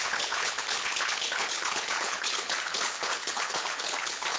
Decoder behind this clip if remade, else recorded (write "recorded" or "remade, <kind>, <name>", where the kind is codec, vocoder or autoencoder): remade, codec, HILCodec